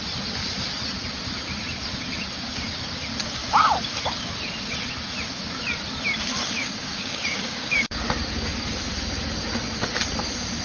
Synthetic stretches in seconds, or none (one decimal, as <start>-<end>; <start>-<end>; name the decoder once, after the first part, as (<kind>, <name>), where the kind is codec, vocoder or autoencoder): 6.6-8.1 (codec, DAC)